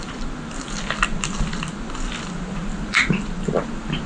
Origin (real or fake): real